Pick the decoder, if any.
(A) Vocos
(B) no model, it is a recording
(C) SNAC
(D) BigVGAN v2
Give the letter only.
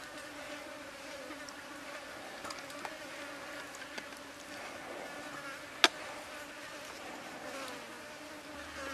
B